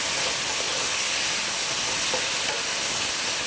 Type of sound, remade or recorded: recorded